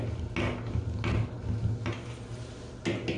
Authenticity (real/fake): real